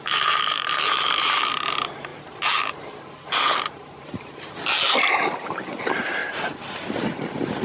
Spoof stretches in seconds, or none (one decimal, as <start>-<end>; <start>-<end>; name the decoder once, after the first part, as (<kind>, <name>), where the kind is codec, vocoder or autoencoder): 0.0-6.2 (vocoder, BigVGAN v2)